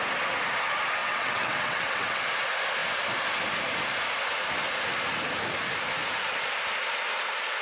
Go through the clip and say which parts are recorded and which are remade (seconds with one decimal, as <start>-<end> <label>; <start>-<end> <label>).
0.0-1.0 recorded; 1.0-2.2 remade; 2.2-7.6 recorded